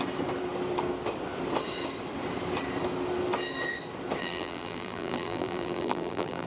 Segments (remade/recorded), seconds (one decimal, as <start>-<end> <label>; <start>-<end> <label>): 0.0-4.2 recorded; 4.2-6.5 remade